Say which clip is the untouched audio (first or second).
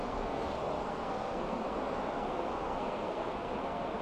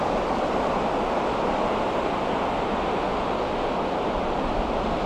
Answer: second